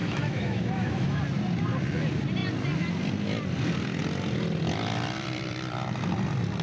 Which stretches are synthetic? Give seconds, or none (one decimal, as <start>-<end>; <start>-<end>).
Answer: 0.0-1.2